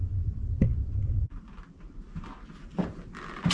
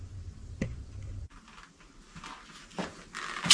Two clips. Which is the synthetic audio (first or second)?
first